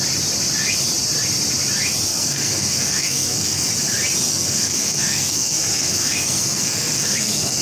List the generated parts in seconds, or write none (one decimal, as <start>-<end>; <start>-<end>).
2.1-3.7; 4.3-7.6